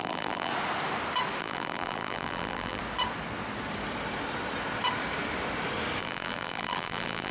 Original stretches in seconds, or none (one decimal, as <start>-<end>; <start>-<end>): 0.5-1.4; 2.8-6.0